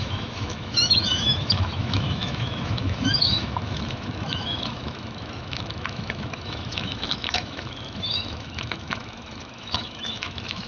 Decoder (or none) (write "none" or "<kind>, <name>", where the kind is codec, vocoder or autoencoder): autoencoder, DAC-VAE